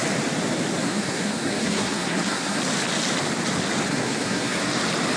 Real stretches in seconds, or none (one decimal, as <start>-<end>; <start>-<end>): 0.0-0.8; 2.6-3.9; 4.6-5.2